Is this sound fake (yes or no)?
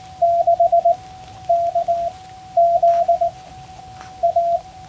no